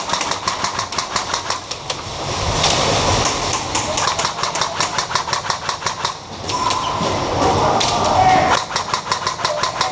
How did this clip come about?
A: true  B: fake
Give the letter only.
A